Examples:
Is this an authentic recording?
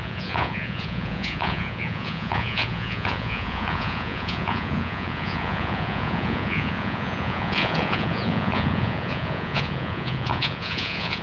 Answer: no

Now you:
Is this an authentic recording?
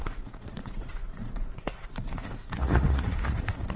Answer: no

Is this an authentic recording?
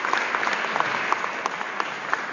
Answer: yes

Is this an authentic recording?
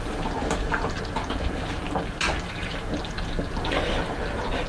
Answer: yes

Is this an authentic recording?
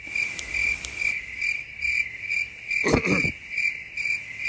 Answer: yes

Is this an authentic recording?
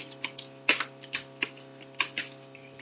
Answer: yes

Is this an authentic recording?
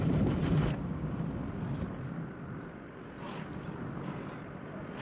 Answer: yes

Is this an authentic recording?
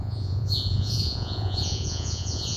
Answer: no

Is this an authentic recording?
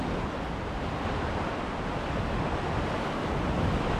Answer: yes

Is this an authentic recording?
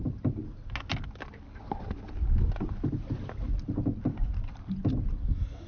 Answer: yes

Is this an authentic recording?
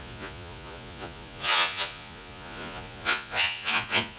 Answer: no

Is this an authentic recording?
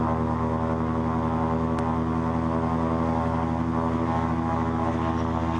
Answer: yes